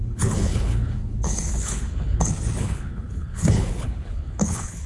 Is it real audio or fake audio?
fake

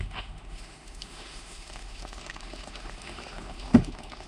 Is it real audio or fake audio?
fake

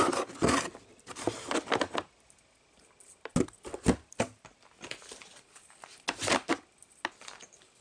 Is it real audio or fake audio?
real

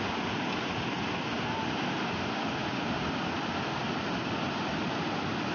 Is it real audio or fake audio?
real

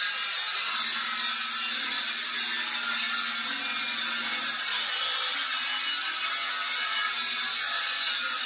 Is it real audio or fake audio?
real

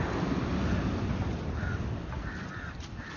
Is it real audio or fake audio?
real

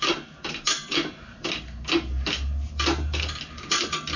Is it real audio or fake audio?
real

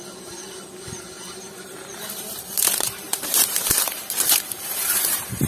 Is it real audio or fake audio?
fake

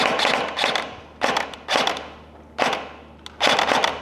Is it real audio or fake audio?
real